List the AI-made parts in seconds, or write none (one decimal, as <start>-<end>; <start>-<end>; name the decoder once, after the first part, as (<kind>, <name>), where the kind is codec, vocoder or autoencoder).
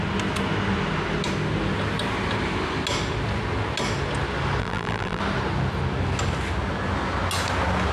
4.6-5.2 (vocoder, BigVGAN v2)